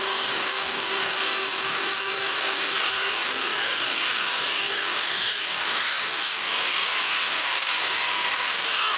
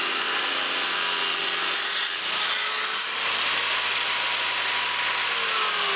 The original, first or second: second